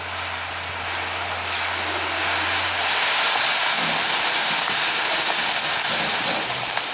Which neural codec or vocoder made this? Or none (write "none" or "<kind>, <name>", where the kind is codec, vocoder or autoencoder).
none